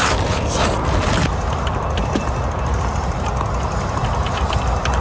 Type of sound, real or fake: real